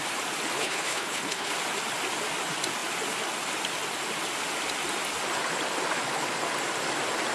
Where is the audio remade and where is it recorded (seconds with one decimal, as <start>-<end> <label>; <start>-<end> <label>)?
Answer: 0.0-0.6 recorded; 0.6-1.5 remade; 1.5-7.3 recorded